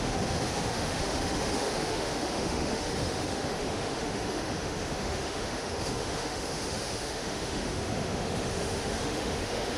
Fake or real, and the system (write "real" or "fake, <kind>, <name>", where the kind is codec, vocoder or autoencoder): fake, autoencoder, DAC-VAE